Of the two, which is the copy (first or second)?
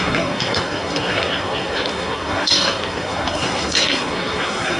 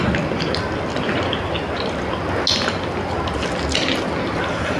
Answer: first